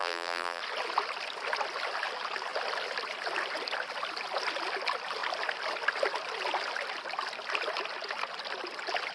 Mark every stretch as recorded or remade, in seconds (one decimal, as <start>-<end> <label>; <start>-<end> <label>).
0.0-0.6 remade; 0.6-9.1 recorded